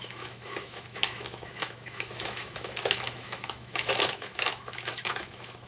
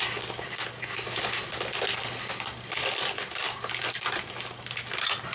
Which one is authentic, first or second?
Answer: second